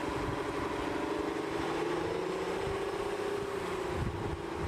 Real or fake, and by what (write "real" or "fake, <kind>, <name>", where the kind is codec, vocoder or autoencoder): real